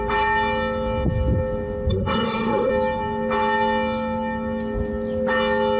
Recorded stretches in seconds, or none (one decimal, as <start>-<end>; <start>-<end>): 0.0-1.9; 2.7-5.8